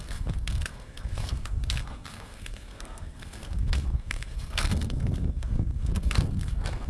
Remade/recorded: remade